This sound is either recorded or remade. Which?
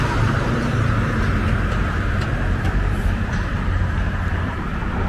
remade